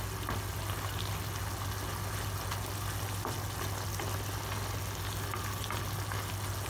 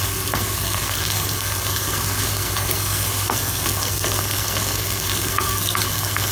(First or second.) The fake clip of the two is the second